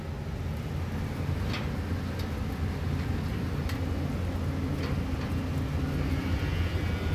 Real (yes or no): yes